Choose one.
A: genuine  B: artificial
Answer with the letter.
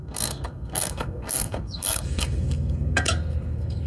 B